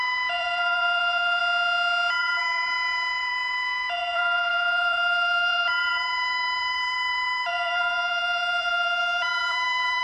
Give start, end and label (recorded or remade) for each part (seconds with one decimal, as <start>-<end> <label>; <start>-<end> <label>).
0.0-1.4 remade; 1.4-2.2 recorded; 2.2-10.0 remade